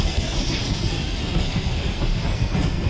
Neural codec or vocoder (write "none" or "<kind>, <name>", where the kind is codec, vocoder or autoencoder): codec, SNAC